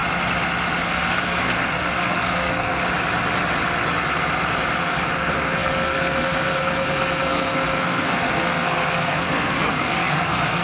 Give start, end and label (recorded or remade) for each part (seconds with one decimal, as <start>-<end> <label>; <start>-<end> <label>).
0.0-0.8 recorded; 0.8-2.8 remade; 2.8-4.8 recorded; 4.8-10.6 remade

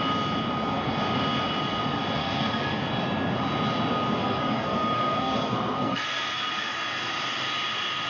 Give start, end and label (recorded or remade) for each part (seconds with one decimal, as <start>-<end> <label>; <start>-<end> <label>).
0.0-2.2 recorded; 2.2-2.9 remade; 2.9-4.2 recorded; 4.2-6.7 remade; 6.7-8.1 recorded

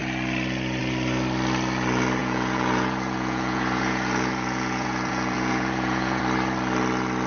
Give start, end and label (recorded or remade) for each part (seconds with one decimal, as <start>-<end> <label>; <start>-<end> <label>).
0.0-2.2 recorded; 2.2-6.2 remade; 6.2-7.3 recorded

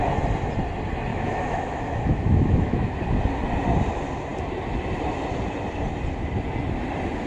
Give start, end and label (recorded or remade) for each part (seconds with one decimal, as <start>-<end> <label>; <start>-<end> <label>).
0.0-1.1 recorded; 1.1-2.9 remade; 2.9-7.3 recorded